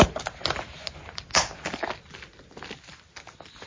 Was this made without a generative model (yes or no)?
yes